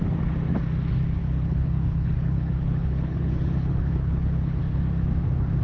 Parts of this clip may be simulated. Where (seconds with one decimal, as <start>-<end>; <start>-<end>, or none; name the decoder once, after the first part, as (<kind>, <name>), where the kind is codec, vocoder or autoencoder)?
1.2-4.6 (codec, HILCodec)